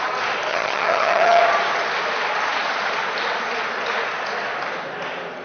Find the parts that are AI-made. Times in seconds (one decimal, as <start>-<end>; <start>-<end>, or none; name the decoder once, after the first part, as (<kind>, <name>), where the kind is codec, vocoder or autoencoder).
0.5-1.4 (vocoder, HiFi-GAN)